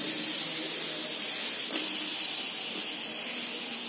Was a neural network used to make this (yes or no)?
yes